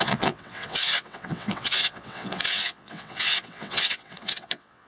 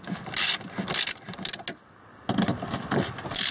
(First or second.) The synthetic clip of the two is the first